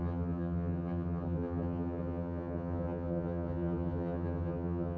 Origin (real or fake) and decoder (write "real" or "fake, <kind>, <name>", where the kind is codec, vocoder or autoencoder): fake, vocoder, HiFi-GAN